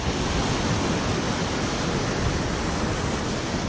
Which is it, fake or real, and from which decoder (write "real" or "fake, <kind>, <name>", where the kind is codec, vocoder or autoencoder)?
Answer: real